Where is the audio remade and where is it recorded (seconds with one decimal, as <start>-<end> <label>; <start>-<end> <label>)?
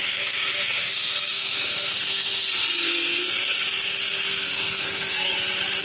0.0-5.3 remade; 5.3-5.8 recorded